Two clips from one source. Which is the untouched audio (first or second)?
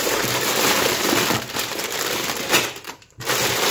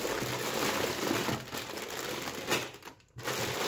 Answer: second